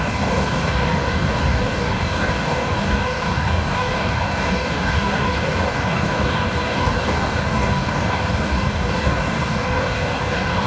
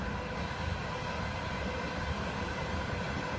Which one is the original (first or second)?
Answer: second